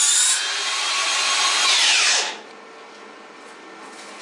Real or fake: real